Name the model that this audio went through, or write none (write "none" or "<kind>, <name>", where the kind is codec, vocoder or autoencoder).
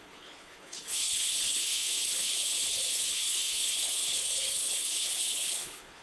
codec, HILCodec